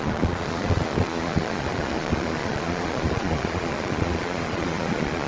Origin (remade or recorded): remade